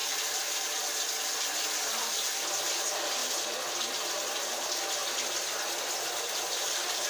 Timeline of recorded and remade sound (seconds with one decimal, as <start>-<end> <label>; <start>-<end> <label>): 0.0-7.1 recorded